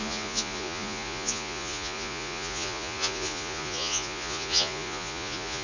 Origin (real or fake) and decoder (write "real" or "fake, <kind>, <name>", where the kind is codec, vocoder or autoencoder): fake, vocoder, Vocos